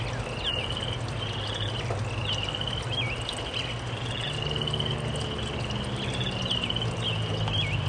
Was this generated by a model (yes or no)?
no